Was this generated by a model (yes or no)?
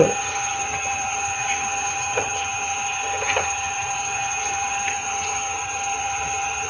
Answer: yes